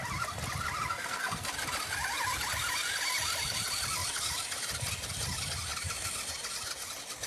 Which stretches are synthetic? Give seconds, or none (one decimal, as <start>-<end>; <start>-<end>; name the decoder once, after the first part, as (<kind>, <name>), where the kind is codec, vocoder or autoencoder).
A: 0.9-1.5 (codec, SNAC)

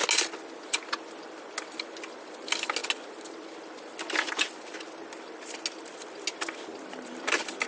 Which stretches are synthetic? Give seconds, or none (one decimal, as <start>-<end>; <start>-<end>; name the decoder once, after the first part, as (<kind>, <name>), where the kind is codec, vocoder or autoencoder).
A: none

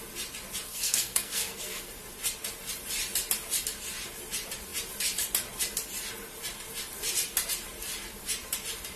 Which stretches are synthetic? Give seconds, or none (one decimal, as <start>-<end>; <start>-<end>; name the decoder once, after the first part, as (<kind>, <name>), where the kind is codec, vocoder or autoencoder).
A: 0.7-1.9 (codec, SNAC)

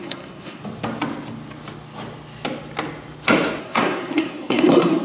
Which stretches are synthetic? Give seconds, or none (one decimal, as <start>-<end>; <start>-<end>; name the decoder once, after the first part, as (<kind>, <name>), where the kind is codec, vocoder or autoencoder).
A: 0.0-0.6 (codec, SNAC); 3.6-5.0

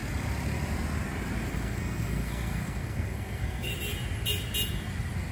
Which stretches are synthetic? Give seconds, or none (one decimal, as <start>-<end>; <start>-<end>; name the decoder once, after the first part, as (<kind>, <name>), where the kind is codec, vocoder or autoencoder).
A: 1.5-3.7 (codec, SNAC)